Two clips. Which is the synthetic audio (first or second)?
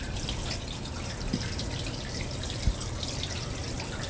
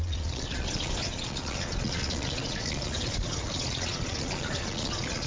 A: second